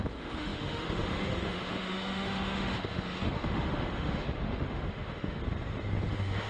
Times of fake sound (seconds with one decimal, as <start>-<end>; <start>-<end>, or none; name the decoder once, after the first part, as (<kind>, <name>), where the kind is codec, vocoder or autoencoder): 0.0-5.4 (autoencoder, DAC-VAE); 6.1-6.5